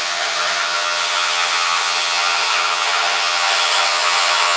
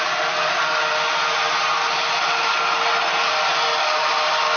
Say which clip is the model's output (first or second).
first